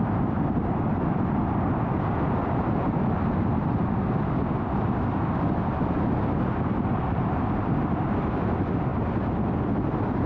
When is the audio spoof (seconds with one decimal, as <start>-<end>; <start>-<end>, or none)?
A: none